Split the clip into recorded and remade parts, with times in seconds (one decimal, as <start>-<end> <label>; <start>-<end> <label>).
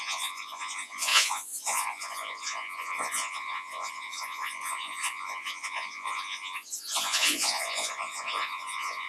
0.0-9.1 remade